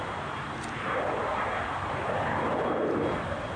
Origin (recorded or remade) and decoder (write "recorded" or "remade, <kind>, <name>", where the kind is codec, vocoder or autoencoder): recorded